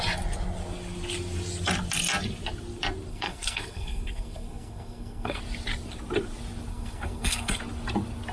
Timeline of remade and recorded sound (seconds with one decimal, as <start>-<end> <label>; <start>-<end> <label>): 0.0-3.1 recorded; 3.1-5.4 remade; 5.4-6.7 recorded; 6.7-7.6 remade; 7.6-8.3 recorded